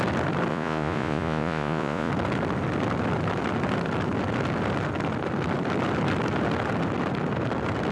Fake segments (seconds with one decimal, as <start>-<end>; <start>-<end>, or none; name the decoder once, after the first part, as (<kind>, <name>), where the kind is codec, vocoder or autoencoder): 0.5-2.1 (vocoder, Vocos)